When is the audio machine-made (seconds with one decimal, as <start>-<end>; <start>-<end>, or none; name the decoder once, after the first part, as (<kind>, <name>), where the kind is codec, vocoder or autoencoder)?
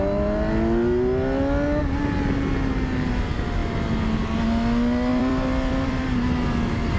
5.1-6.0 (vocoder, BigVGAN v2)